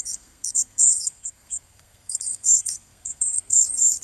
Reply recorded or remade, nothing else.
remade